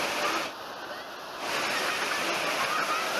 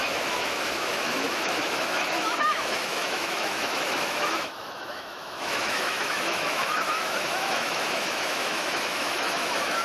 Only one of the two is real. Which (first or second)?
first